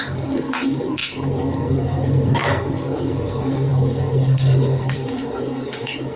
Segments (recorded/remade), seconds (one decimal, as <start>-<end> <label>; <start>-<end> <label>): 0.0-6.2 remade